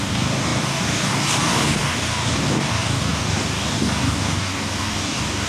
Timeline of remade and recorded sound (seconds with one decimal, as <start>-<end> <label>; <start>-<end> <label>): 0.0-5.5 remade